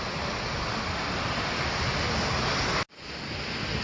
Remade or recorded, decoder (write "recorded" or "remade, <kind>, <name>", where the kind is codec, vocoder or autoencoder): recorded